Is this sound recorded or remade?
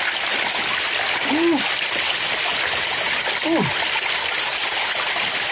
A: recorded